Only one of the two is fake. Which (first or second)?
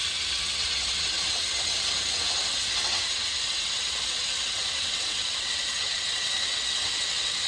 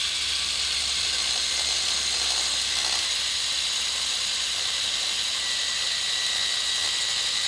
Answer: first